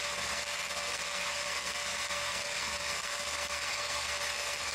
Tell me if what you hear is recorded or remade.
remade